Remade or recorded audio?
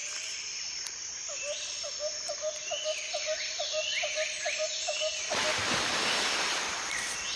remade